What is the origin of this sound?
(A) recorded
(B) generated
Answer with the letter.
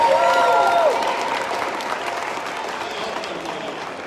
A